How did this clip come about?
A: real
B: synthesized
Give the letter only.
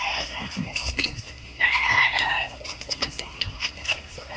B